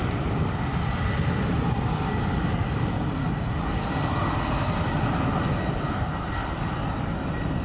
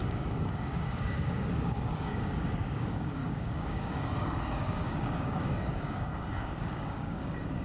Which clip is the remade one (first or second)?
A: second